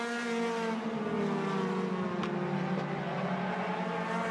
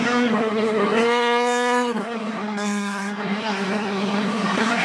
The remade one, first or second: second